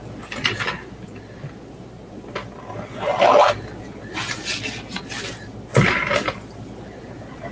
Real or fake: real